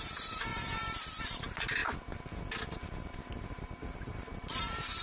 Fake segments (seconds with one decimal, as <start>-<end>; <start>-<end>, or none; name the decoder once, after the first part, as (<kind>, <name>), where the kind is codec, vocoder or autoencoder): 0.0-1.8 (vocoder, BigVGAN v2); 2.7-5.0